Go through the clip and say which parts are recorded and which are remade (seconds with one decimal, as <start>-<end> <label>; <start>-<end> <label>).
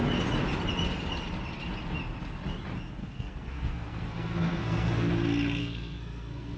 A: 0.0-3.0 recorded; 3.0-5.1 remade; 5.1-5.6 recorded; 5.6-6.6 remade